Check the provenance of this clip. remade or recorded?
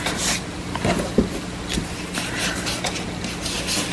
recorded